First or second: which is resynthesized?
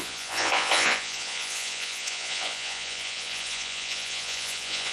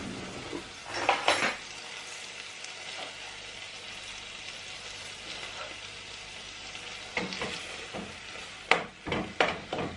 first